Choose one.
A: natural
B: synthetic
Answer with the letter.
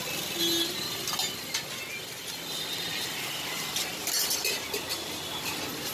A